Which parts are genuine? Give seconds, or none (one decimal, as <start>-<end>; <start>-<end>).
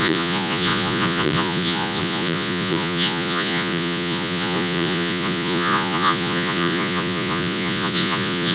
none